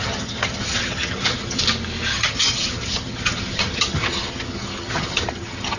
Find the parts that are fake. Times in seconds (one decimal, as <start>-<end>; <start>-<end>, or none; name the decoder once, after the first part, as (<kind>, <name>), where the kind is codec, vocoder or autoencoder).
0.0-1.6 (vocoder, HiFi-GAN); 2.1-5.8